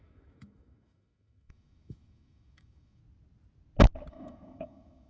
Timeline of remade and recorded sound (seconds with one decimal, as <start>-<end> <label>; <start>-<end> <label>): 0.0-3.0 remade; 3.0-4.1 recorded; 4.1-5.1 remade